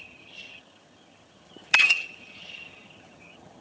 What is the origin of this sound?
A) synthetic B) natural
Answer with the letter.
A